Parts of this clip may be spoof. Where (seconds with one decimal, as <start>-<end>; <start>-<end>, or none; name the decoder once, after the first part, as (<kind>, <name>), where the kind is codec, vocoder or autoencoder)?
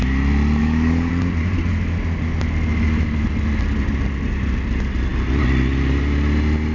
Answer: 0.6-1.1 (codec, DAC)